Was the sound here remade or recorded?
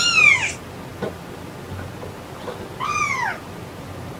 recorded